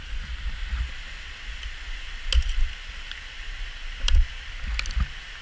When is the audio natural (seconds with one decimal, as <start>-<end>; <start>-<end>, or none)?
0.0-2.8; 4.5-5.4